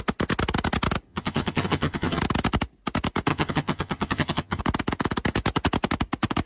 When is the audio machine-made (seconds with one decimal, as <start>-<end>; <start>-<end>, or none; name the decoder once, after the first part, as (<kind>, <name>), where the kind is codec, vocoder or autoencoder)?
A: 1.1-2.2 (vocoder, HiFi-GAN); 3.3-4.6